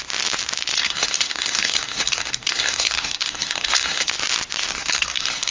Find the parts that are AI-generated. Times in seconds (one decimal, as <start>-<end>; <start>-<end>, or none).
0.8-4.1; 4.7-5.5